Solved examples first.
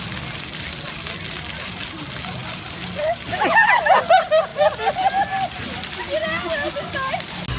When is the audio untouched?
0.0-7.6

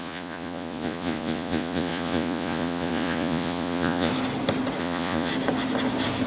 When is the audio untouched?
4.1-4.8; 5.3-6.3

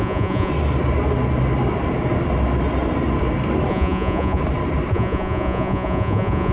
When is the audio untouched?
0.5-3.7; 4.4-4.9